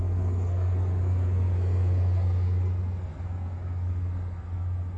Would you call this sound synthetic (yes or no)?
yes